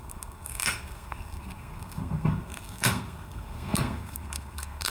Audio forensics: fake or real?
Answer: fake